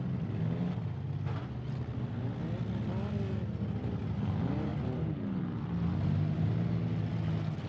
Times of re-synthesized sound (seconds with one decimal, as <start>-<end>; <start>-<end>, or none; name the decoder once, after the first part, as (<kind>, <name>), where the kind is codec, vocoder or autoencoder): none